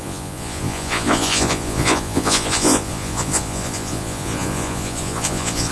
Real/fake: fake